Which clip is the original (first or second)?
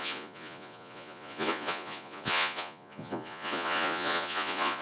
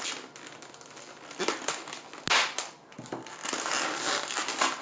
second